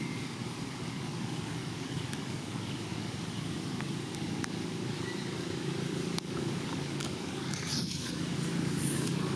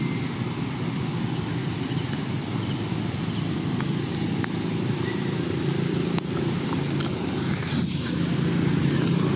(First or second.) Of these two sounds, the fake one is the first